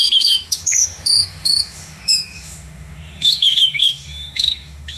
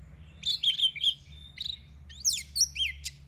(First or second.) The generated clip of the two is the first